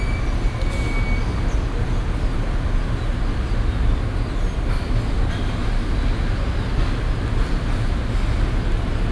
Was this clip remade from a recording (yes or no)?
no